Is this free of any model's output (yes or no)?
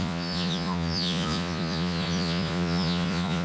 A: no